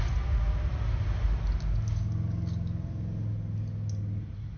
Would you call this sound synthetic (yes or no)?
no